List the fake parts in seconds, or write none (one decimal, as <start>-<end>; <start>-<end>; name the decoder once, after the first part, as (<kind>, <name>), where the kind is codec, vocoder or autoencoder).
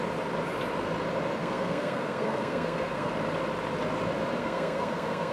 1.4-3.1 (codec, SNAC); 4.4-5.3